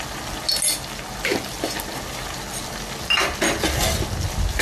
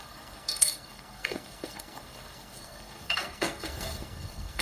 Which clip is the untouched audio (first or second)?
first